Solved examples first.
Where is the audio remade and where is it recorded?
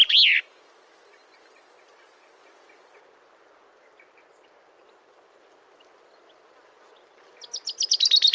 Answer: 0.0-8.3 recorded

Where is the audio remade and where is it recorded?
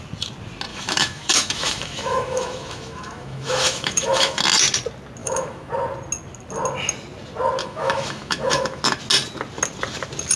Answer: 0.0-0.7 recorded; 0.7-4.4 remade; 4.4-5.2 recorded; 5.2-5.7 remade; 5.7-7.6 recorded; 7.6-8.8 remade; 8.8-10.4 recorded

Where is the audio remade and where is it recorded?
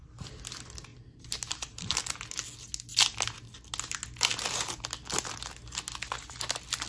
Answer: 0.0-0.9 recorded; 0.9-2.0 remade; 2.0-6.9 recorded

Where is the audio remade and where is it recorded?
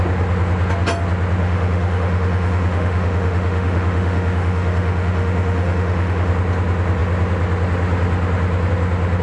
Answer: 0.0-1.4 recorded; 1.4-6.3 remade; 6.3-9.2 recorded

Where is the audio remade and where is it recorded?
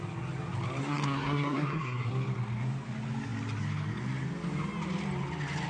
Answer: 0.0-0.8 recorded; 0.8-2.1 remade; 2.1-5.7 recorded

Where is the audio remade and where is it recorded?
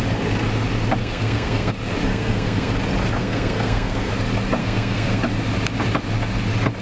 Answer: 0.0-1.0 recorded; 1.0-1.7 remade; 1.7-2.1 recorded; 2.1-2.7 remade; 2.7-3.2 recorded; 3.2-4.1 remade; 4.1-4.6 recorded; 4.6-5.2 remade; 5.2-6.8 recorded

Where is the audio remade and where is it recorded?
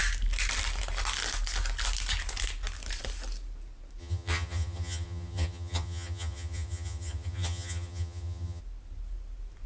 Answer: 0.0-4.0 recorded; 4.0-8.6 remade; 8.6-9.7 recorded